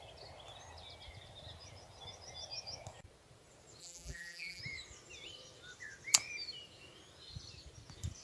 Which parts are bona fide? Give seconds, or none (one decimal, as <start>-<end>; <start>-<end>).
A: 0.0-3.8; 4.6-8.2